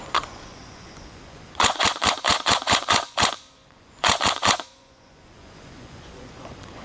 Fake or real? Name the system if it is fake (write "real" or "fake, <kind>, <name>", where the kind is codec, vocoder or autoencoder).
fake, vocoder, Vocos